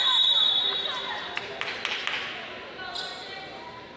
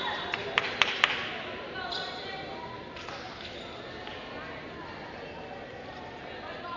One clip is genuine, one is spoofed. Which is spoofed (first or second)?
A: second